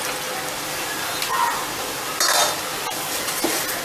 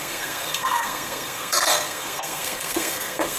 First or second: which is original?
first